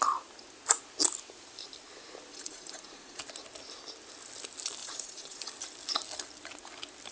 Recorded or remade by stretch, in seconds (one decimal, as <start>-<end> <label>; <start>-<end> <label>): 0.0-2.3 recorded; 2.3-3.2 remade; 3.2-4.8 recorded; 4.8-5.5 remade; 5.5-7.1 recorded